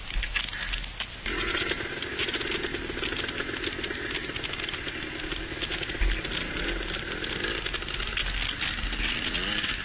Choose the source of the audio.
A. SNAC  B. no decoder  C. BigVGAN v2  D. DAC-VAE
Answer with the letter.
B